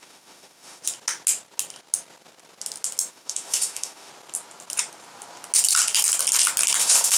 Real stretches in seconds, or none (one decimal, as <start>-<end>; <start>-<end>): 0.8-3.1; 4.1-6.8